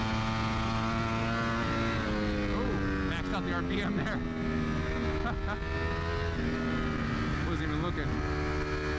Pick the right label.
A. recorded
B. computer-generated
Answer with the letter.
A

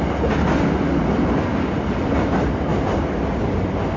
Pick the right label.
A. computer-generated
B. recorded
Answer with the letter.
B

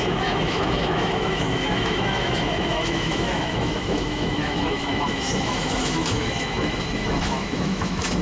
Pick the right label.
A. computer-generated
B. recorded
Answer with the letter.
A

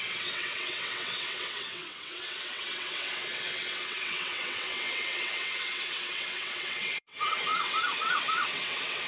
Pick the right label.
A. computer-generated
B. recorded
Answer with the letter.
A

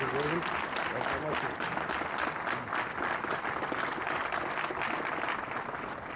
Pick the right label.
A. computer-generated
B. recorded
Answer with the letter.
B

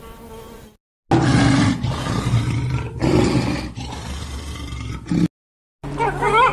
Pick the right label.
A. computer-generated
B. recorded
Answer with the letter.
B